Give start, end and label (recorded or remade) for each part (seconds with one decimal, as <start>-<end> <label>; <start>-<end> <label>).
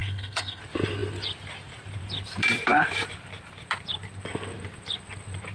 0.0-0.6 remade; 0.6-5.5 recorded